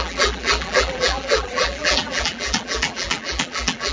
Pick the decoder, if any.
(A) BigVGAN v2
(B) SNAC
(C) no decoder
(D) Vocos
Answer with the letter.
A